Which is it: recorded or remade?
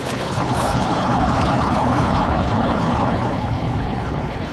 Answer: remade